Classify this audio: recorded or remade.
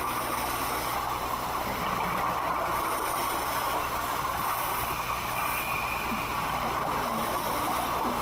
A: remade